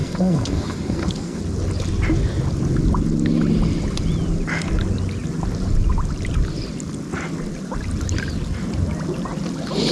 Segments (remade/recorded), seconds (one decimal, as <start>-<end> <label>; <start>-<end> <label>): 0.0-1.4 remade; 1.4-9.9 recorded